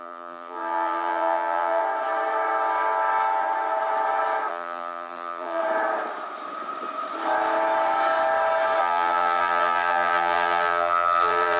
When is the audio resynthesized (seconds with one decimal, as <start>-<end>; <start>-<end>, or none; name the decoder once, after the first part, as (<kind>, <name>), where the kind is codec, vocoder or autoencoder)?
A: 0.0-1.8 (vocoder, BigVGAN v2); 4.5-5.6; 8.8-11.6